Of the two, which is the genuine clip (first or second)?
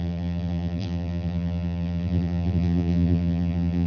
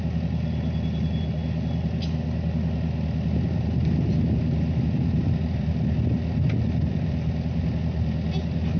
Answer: second